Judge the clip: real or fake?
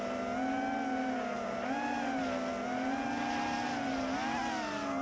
real